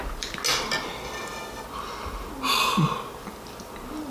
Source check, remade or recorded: recorded